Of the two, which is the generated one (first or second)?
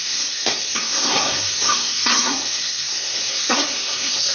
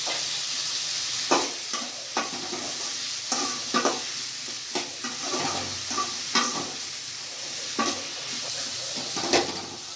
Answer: first